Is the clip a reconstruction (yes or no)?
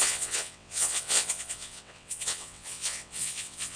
yes